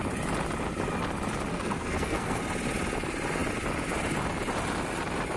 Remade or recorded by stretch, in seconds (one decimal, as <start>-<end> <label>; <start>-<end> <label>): 0.0-1.5 recorded; 1.5-2.4 remade; 2.4-5.4 recorded